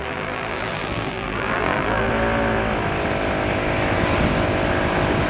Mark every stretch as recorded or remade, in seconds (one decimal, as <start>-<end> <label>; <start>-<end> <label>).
0.0-2.1 remade; 2.1-5.3 recorded

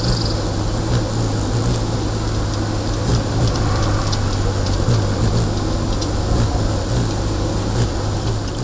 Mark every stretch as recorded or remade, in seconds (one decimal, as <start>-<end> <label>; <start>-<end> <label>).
0.0-3.1 recorded; 3.1-4.0 remade; 4.0-8.6 recorded

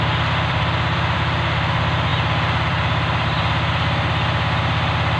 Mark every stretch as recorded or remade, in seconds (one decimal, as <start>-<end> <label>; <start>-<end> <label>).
0.0-5.2 remade

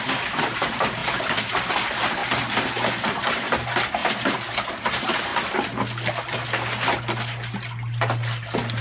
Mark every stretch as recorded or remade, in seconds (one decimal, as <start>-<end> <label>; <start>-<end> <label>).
0.0-1.0 remade; 1.0-1.5 recorded; 1.5-2.2 remade; 2.2-3.0 recorded; 3.0-4.0 remade; 4.0-4.7 recorded; 4.7-5.3 remade; 5.3-8.8 recorded

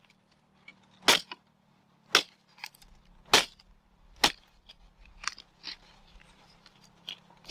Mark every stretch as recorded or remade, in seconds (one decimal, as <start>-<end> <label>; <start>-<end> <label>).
0.0-7.5 recorded